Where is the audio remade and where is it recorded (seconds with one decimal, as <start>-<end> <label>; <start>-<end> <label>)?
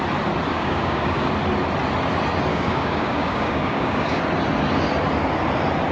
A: 0.0-0.5 recorded; 0.5-1.3 remade; 1.3-2.5 recorded; 2.5-4.2 remade; 4.2-5.9 recorded